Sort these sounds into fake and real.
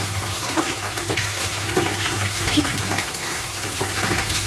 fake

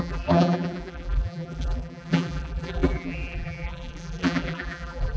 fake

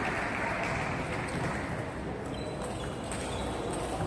real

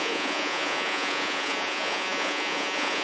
fake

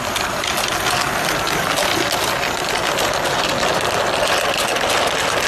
real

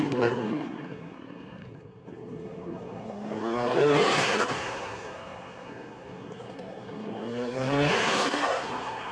fake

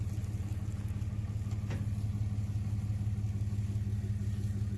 real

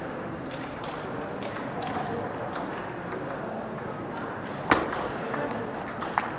real